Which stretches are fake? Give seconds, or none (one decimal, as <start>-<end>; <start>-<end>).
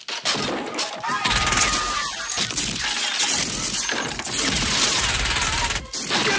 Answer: none